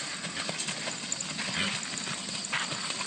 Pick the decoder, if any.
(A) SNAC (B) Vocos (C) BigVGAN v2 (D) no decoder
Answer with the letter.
D